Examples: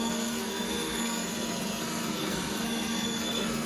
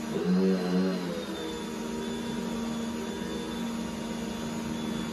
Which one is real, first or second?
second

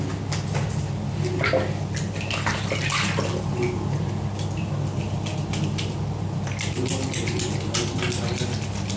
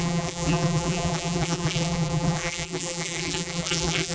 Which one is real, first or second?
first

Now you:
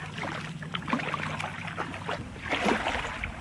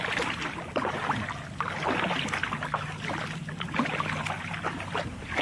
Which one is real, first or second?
first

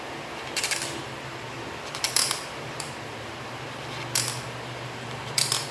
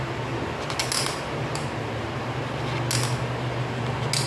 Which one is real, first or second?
second